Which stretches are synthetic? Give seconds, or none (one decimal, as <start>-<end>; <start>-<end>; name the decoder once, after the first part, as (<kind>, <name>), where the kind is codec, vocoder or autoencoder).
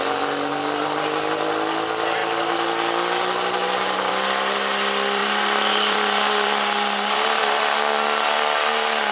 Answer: 5.2-7.6 (vocoder, BigVGAN v2)